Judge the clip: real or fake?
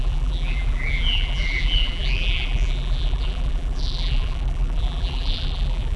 fake